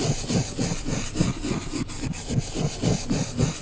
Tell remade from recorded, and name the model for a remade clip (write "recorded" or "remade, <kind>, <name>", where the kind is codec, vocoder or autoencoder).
recorded